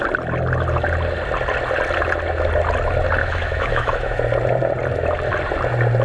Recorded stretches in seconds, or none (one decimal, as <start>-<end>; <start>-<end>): 0.0-3.2; 4.2-6.0